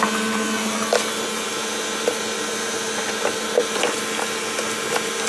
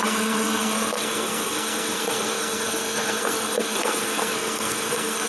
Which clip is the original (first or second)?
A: first